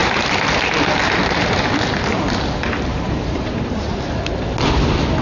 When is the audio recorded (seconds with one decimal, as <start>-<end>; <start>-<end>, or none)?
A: 0.0-2.9; 4.0-5.2